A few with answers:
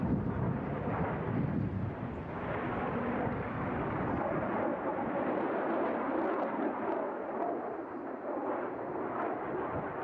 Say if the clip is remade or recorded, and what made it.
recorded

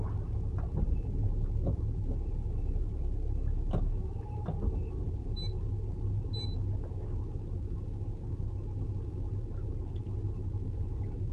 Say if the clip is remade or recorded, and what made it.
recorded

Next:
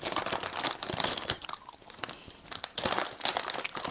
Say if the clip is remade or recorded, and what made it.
recorded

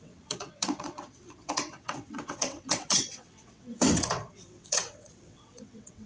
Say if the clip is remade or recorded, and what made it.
remade, vocoder, WaveNeXt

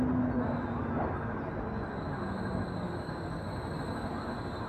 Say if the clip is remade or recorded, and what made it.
recorded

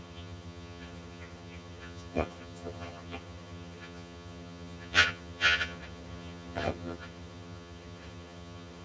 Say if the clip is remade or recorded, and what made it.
remade, vocoder, HiFi-GAN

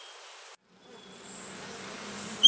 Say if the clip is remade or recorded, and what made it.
recorded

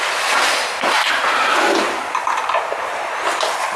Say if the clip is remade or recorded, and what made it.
recorded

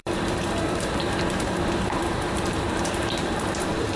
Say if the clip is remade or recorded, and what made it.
remade, vocoder, BigVGAN v2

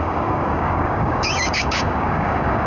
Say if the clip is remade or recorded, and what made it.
remade, codec, DAC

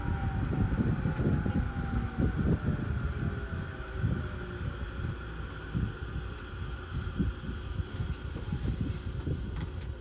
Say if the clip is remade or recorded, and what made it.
recorded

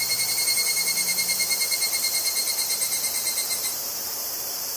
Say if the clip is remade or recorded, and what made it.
remade, vocoder, BigVGAN v2